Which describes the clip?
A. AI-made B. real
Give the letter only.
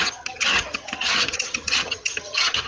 A